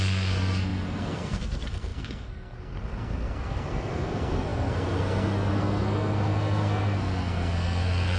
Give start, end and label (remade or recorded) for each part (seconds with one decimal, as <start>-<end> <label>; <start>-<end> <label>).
0.0-8.2 remade